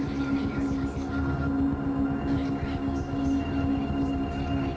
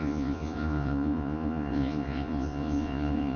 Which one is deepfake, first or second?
second